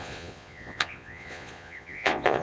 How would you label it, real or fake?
fake